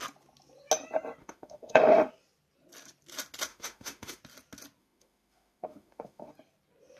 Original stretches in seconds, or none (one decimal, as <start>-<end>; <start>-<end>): 0.0-1.2; 2.1-3.5; 4.2-4.8; 6.3-7.0